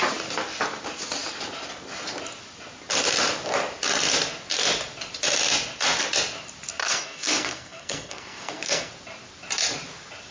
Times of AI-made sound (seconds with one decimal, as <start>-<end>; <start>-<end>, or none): 6.8-8.9